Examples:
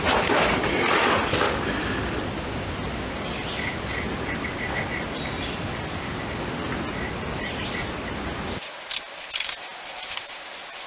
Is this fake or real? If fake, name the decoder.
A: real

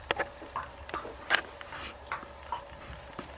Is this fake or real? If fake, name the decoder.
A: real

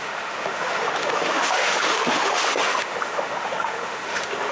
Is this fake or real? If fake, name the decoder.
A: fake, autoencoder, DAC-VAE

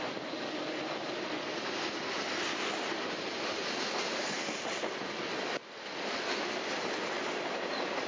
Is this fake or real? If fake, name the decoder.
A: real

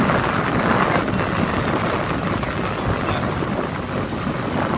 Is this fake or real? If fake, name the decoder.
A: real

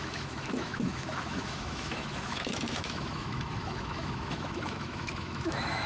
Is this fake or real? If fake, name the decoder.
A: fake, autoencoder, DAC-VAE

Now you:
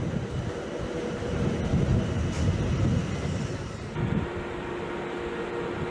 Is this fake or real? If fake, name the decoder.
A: real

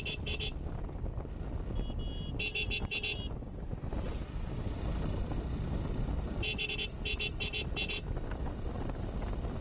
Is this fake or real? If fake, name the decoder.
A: real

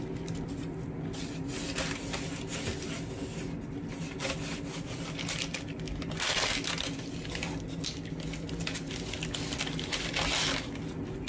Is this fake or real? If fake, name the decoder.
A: real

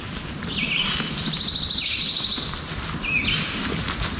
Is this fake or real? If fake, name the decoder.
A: real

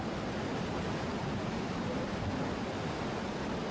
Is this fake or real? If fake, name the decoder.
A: real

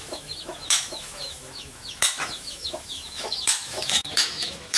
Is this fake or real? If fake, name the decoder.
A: fake, autoencoder, DAC-VAE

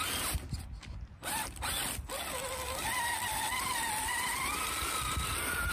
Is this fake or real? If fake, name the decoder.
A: real